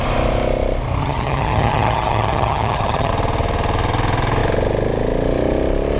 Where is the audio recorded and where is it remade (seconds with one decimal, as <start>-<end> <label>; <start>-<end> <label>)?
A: 0.0-1.0 recorded; 1.0-3.1 remade; 3.1-6.0 recorded